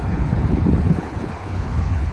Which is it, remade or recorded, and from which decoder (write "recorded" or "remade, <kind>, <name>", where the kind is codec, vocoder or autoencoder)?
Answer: remade, codec, HILCodec